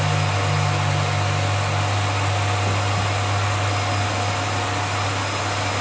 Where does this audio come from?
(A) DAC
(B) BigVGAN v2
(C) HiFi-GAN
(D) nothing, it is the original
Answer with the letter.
D